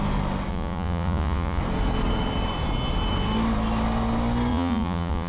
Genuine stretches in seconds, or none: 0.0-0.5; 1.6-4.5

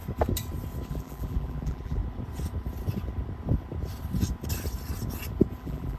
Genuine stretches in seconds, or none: 0.0-0.9; 2.0-5.6

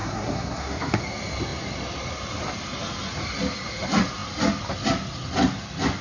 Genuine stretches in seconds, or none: 1.0-6.0

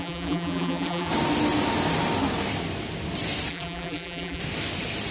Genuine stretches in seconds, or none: 1.1-3.5; 4.4-5.1

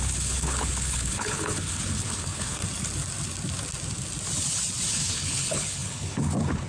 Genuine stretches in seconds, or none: 2.6-4.9